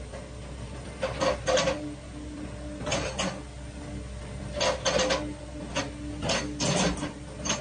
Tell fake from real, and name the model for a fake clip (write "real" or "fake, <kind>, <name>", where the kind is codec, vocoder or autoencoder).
real